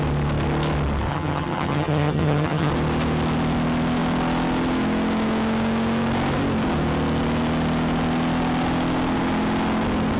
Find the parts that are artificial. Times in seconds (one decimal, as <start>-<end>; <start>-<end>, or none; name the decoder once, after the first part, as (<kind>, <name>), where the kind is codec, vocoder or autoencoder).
1.1-2.7 (vocoder, HiFi-GAN)